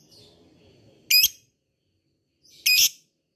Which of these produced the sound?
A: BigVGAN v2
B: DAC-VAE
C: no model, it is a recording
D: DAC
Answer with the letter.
C